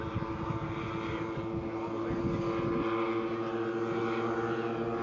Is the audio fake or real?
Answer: real